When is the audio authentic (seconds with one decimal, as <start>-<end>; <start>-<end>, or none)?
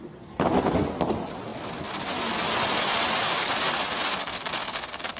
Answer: 0.0-5.2